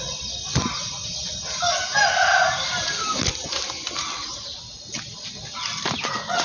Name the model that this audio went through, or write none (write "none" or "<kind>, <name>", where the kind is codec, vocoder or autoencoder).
none